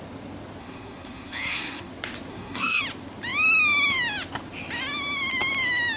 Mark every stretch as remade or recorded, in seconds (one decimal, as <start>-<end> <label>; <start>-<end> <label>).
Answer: 0.0-0.6 recorded; 0.6-1.9 remade; 1.9-2.3 recorded; 2.3-2.8 remade; 2.8-6.0 recorded